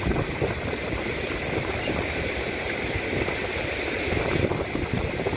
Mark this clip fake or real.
fake